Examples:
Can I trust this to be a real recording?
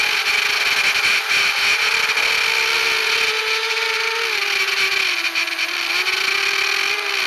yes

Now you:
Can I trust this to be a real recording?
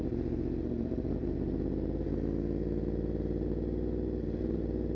yes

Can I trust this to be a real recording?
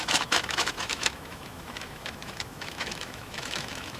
no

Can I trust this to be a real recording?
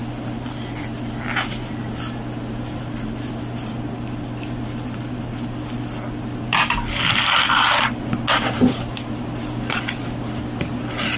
yes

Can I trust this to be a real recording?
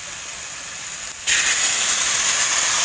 yes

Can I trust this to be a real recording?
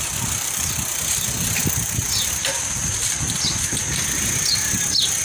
yes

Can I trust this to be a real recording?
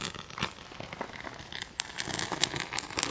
yes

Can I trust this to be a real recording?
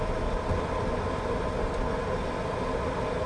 yes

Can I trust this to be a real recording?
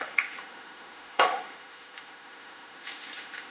no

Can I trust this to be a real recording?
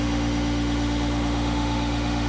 no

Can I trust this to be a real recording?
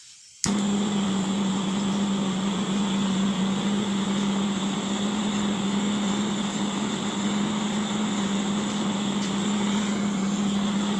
yes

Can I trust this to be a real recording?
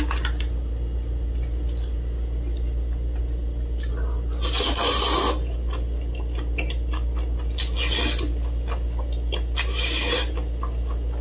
yes